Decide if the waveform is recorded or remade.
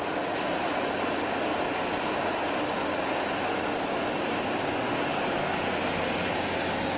recorded